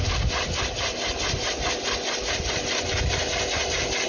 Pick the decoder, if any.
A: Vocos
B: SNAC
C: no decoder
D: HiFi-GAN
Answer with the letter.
C